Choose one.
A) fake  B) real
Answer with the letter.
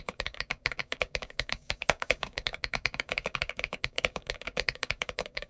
A